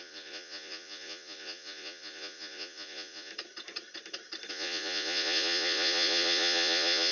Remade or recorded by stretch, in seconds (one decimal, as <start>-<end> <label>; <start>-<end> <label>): 0.0-3.3 remade; 3.3-4.5 recorded; 4.5-7.1 remade